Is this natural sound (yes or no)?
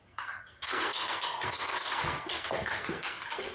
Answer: no